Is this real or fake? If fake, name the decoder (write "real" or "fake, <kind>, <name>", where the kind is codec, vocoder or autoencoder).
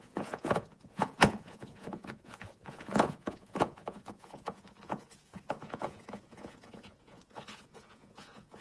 fake, vocoder, Vocos